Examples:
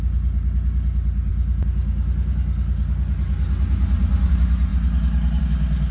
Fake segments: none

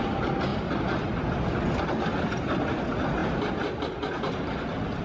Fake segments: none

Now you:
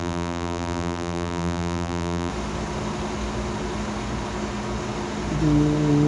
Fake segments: 0.0-2.3 (vocoder, BigVGAN v2)